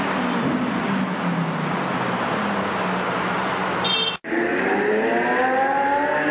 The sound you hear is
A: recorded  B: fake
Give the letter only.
A